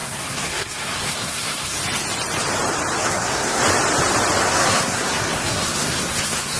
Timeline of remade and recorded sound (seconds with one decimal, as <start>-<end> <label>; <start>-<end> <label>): 0.0-1.8 remade; 1.8-3.0 recorded; 3.0-3.6 remade; 3.6-4.4 recorded; 4.4-6.6 remade